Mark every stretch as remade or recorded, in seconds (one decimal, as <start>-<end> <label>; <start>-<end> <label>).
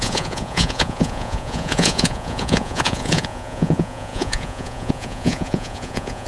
0.0-6.3 remade